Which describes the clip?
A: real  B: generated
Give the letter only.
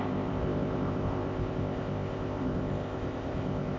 B